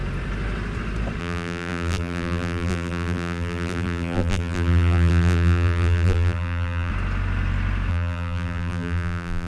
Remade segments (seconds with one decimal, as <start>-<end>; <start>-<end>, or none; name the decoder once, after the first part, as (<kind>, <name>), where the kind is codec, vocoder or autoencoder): 1.2-6.9 (vocoder, BigVGAN v2); 7.9-9.5

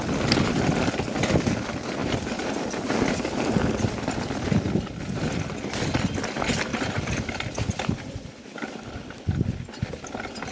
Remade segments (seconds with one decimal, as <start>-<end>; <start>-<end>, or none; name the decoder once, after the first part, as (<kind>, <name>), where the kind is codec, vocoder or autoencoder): 2.0-2.5 (vocoder, BigVGAN v2); 6.7-8.4

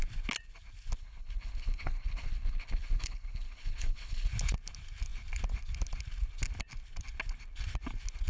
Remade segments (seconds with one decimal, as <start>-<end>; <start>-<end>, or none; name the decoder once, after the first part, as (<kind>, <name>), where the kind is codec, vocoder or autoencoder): 1.0-4.3 (codec, HILCodec)

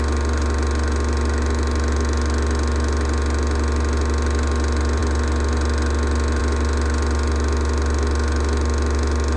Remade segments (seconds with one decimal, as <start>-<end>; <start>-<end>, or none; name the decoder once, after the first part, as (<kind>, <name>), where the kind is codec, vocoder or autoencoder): none

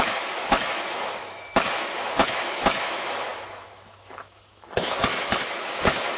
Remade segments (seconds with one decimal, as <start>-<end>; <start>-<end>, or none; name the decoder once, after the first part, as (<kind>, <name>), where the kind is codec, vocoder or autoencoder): 0.0-6.2 (autoencoder, DAC-VAE)

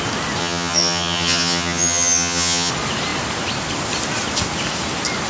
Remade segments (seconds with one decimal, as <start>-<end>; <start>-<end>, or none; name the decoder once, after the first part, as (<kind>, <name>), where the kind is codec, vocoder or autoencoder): 0.4-2.7 (vocoder, HiFi-GAN)

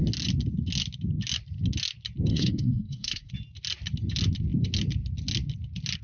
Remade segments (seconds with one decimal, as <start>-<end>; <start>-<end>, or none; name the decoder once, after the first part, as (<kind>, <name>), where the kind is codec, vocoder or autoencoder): 2.3-3.3 (codec, SNAC)

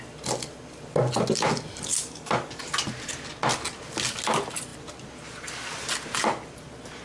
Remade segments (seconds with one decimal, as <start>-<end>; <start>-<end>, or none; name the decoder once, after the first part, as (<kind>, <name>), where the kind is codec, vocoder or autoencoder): 1.9-2.6 (codec, DAC)